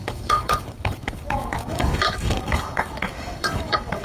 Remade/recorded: remade